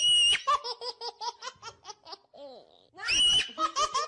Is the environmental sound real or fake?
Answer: real